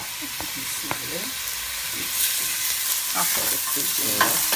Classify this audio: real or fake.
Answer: real